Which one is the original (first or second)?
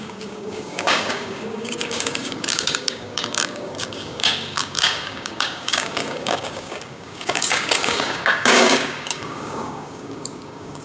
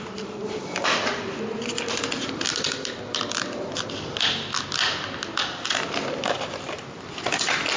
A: second